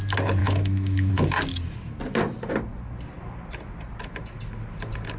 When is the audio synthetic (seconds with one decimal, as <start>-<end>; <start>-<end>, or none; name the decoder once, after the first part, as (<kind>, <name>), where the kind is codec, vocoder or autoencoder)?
0.4-1.1 (autoencoder, DAC-VAE)